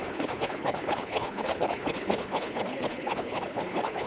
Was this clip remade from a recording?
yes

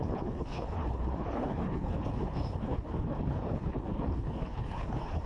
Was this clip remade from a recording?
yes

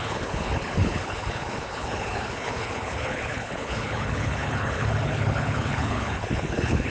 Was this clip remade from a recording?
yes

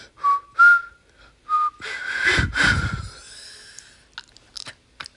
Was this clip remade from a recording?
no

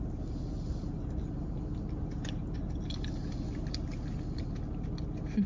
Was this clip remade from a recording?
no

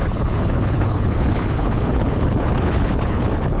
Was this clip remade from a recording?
yes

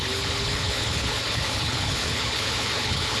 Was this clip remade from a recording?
yes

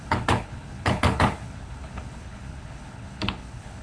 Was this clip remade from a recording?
yes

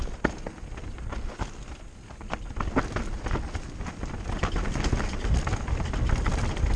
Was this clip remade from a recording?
no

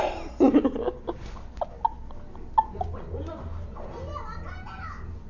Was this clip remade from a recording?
no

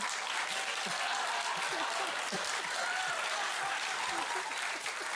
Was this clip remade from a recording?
no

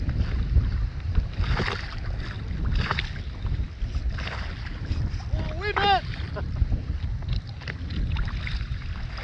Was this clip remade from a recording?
no